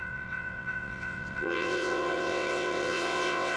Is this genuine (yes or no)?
no